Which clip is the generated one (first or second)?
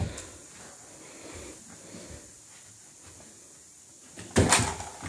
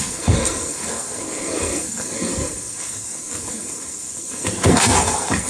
second